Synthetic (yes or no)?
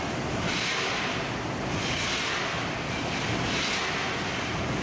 no